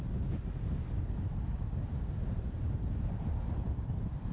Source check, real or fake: real